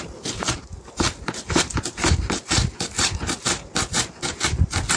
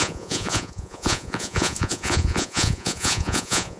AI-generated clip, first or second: second